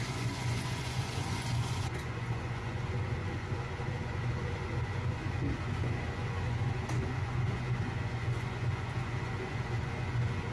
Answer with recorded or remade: remade